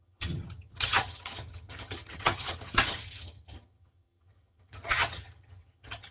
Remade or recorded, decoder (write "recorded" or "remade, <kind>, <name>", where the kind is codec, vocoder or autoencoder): remade, vocoder, HiFi-GAN